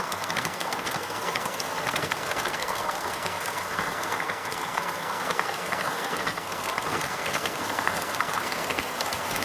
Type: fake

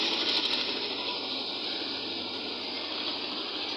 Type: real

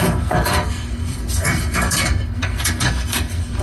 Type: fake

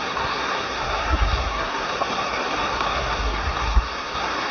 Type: fake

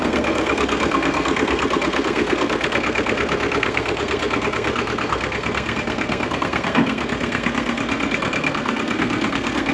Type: fake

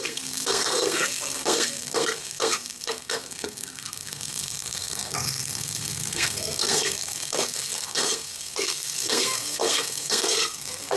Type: fake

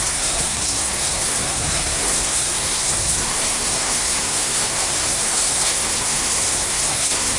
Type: fake